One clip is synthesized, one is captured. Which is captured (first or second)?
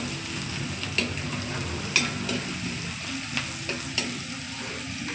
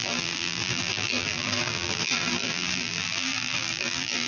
first